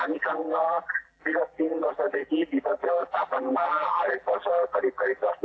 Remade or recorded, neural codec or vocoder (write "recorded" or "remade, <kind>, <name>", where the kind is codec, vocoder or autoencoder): remade, vocoder, BigVGAN v2